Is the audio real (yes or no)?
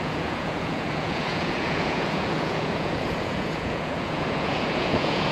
no